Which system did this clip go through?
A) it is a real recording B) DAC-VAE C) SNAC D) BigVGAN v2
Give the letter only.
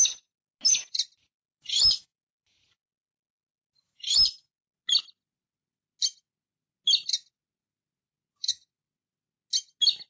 A